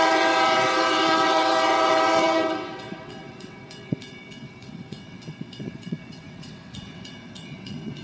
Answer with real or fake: fake